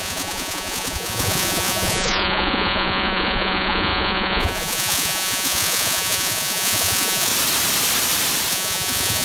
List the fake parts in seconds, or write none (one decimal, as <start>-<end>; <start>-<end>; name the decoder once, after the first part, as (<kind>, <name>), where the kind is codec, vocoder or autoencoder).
0.0-7.3 (vocoder, Vocos); 8.5-9.2

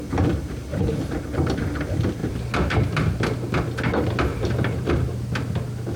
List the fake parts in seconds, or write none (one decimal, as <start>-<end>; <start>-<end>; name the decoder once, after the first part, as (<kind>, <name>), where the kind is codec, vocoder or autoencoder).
0.7-1.6 (vocoder, BigVGAN v2); 4.3-5.1